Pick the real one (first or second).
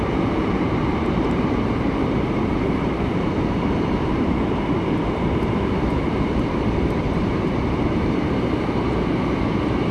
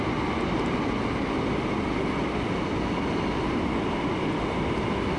second